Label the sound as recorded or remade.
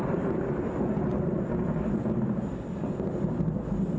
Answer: recorded